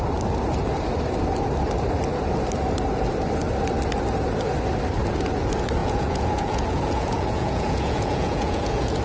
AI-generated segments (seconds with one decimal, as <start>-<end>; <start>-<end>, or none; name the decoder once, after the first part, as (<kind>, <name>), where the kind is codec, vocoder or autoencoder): 5.8-9.0 (vocoder, Vocos)